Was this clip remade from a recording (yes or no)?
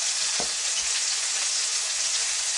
yes